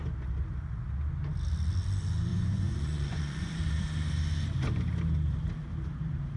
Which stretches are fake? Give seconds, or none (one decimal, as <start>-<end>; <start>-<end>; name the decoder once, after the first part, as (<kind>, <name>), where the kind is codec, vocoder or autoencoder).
2.3-3.6 (vocoder, Vocos)